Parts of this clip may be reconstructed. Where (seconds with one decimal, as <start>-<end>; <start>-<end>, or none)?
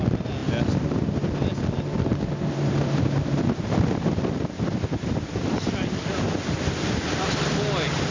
none